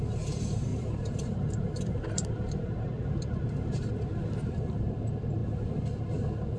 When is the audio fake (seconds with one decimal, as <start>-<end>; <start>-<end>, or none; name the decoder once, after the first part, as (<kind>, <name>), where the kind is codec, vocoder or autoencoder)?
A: 0.7-3.9 (vocoder, BigVGAN v2)